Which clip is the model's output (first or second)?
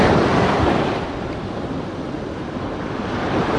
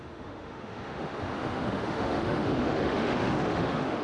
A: second